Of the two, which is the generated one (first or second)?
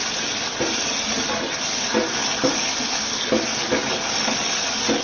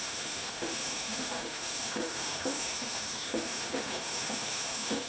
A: second